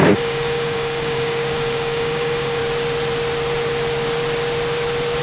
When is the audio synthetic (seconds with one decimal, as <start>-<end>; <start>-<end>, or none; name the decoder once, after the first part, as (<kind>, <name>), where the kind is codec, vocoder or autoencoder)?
0.0-2.6 (codec, DAC)